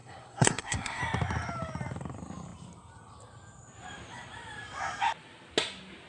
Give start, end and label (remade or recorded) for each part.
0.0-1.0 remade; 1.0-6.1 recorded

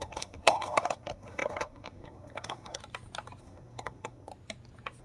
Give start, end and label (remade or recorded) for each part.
0.0-2.8 remade; 2.8-3.4 recorded; 3.4-4.3 remade; 4.3-5.0 recorded

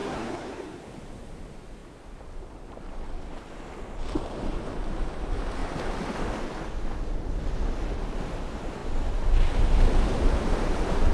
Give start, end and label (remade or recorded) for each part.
0.0-0.8 remade; 0.8-11.1 recorded